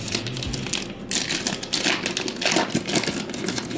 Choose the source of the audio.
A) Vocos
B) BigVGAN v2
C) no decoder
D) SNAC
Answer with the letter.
C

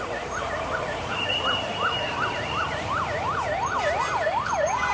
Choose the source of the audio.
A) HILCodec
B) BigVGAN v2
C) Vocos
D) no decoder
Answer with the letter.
B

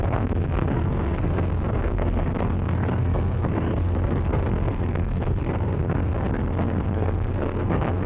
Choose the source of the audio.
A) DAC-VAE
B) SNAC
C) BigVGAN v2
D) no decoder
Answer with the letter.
B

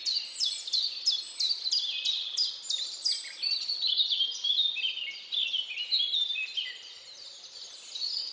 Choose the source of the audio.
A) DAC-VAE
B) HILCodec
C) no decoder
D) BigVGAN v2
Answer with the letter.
C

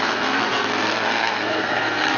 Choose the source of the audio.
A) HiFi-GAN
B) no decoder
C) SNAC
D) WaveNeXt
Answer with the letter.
C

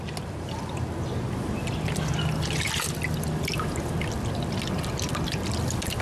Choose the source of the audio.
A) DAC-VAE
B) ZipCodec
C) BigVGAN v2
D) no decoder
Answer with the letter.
D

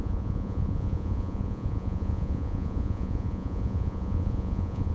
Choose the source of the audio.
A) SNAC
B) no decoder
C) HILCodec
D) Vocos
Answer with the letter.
D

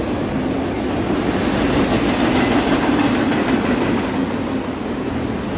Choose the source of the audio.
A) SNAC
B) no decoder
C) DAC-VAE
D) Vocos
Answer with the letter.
B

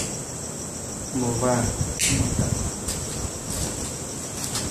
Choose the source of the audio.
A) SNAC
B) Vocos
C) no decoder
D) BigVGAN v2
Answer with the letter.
C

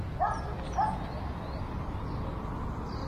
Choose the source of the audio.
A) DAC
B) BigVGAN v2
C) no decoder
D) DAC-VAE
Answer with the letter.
C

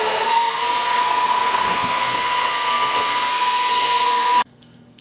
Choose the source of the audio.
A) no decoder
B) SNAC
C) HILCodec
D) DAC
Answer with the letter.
B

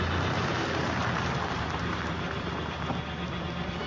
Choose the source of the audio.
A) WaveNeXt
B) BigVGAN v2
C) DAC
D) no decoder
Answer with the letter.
D